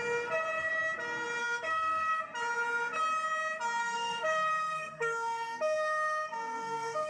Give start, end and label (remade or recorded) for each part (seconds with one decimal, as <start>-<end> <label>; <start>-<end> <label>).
0.0-1.4 recorded; 1.4-2.2 remade; 2.2-3.8 recorded; 3.8-7.1 remade